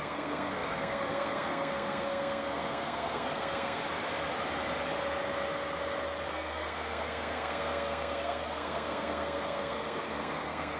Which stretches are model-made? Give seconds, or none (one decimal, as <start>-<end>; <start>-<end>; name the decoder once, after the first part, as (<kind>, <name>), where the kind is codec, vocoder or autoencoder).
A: 0.0-3.8 (codec, SNAC); 6.3-10.8